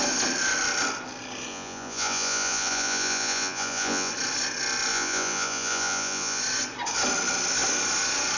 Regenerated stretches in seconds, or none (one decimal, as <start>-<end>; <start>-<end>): 1.5-4.1; 4.9-6.4